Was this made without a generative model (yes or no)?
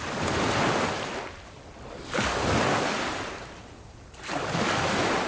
yes